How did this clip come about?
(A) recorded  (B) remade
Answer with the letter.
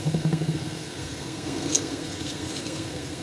B